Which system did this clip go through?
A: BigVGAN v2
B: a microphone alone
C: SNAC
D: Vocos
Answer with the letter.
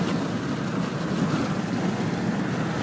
B